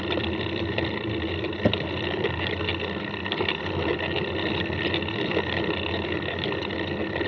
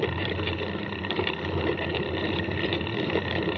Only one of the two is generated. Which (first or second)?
second